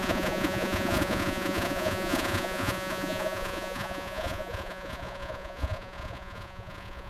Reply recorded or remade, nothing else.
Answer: remade